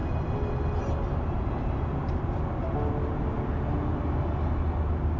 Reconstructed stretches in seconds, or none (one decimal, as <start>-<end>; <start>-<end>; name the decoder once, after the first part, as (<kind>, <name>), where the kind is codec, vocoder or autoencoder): none